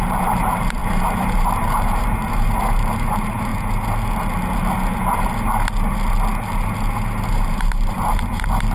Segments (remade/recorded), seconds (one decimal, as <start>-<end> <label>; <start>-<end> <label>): 0.0-3.5 remade; 3.5-7.3 recorded; 7.3-8.7 remade